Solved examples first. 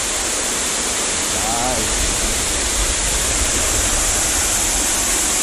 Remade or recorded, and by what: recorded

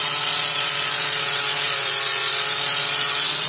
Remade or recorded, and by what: remade, vocoder, Vocos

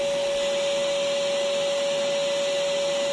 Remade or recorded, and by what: recorded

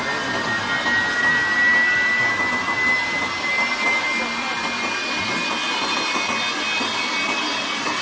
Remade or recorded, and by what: recorded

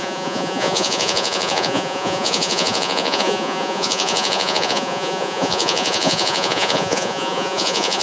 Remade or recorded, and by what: remade, vocoder, Vocos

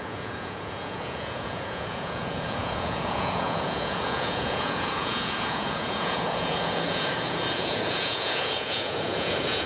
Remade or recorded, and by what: remade, vocoder, Vocos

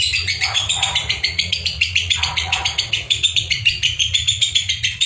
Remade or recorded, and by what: remade, vocoder, Vocos